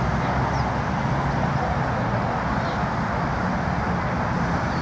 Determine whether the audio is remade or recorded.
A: recorded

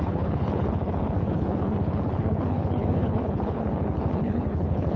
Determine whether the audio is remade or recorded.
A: remade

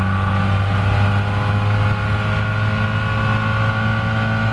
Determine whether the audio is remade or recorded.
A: recorded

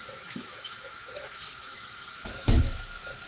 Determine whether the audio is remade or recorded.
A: remade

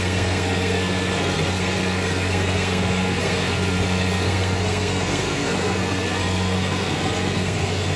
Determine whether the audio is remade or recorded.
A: remade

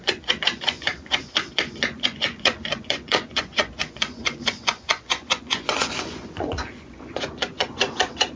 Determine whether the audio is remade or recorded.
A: remade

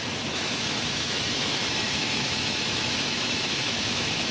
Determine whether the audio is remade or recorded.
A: remade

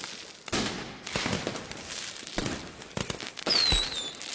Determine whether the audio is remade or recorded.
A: recorded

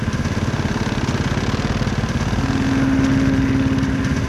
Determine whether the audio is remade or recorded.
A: recorded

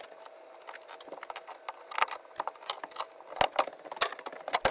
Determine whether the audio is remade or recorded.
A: recorded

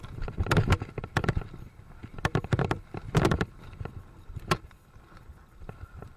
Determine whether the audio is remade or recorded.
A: remade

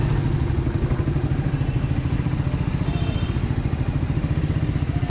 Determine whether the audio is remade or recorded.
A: recorded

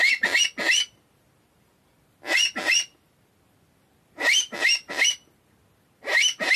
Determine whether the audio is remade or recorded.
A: recorded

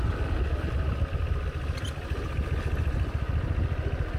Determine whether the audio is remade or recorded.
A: recorded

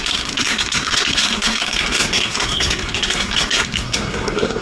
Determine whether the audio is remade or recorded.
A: remade